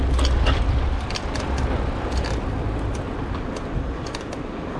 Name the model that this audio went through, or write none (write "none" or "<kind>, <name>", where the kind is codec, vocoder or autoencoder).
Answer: vocoder, BigVGAN v2